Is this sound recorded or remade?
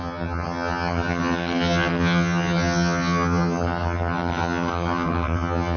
remade